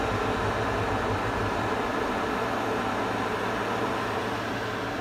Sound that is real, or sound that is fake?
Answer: real